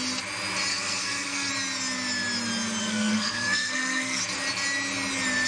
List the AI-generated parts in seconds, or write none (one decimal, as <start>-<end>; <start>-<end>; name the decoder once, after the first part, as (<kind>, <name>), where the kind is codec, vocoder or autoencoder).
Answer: 0.7-1.5 (codec, SNAC); 2.8-4.2